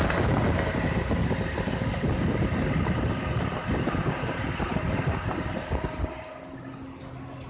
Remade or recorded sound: recorded